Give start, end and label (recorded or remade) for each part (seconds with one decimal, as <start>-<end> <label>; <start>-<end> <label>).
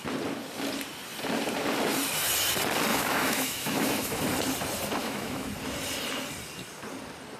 0.0-2.9 recorded; 2.9-4.2 remade; 4.2-5.0 recorded; 5.0-5.5 remade; 5.5-7.4 recorded